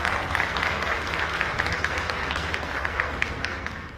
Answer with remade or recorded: remade